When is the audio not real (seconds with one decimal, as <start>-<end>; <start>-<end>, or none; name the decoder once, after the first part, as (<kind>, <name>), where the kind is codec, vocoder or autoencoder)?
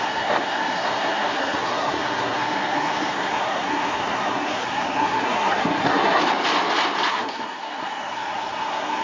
0.0-6.2 (codec, SNAC); 7.1-9.0